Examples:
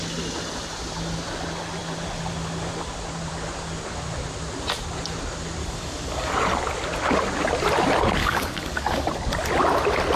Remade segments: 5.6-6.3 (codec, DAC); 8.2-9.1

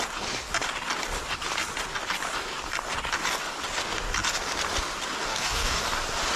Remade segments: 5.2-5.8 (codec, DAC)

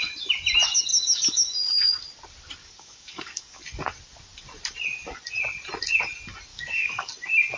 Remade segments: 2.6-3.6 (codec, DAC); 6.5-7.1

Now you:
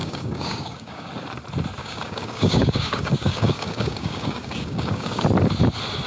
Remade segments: 0.0-1.1 (codec, DAC); 1.8-5.2

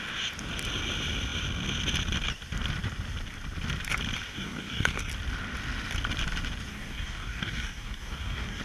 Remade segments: 4.3-5.1 (codec, DAC); 6.7-8.6

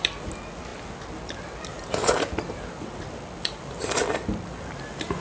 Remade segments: none

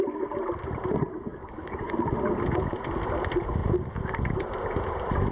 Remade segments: 1.3-1.9 (codec, DAC)